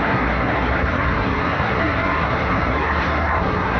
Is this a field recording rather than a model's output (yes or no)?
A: no